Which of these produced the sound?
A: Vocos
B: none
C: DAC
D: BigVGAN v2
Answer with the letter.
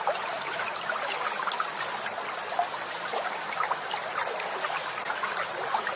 B